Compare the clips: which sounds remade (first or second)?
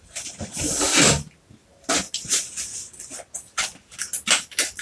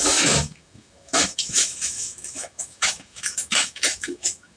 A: second